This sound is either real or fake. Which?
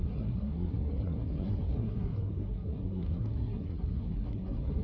fake